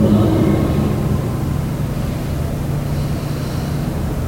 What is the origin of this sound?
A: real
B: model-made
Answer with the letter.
B